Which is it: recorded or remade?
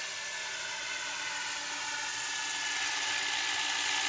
recorded